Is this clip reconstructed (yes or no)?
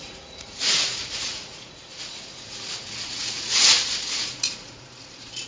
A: yes